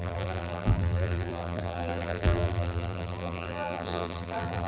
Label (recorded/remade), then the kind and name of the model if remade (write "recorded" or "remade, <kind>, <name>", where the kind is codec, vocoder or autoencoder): remade, vocoder, BigVGAN v2